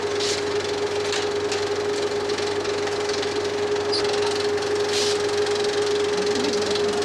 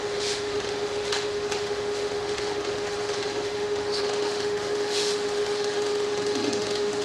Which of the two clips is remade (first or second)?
second